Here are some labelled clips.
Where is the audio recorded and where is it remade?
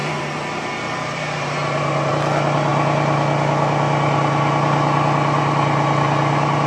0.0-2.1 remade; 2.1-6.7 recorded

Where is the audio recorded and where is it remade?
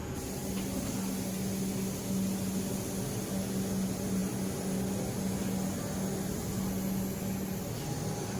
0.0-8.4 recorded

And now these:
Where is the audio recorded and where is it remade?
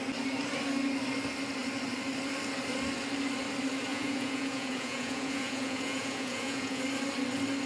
0.0-3.9 recorded; 3.9-6.8 remade; 6.8-7.7 recorded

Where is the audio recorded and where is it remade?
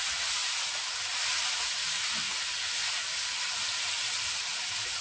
0.0-5.0 remade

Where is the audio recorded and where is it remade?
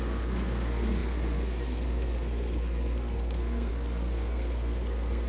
0.0-5.3 remade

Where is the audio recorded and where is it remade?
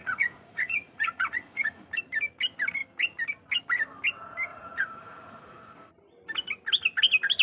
0.0-1.9 remade; 1.9-4.5 recorded; 4.5-5.9 remade; 5.9-7.4 recorded